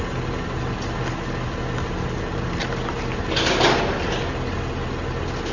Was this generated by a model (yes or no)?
no